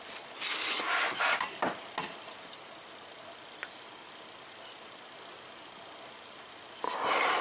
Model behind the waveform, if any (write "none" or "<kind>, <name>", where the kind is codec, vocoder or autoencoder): none